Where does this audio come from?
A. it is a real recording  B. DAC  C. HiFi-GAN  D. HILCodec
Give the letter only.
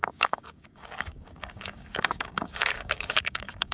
B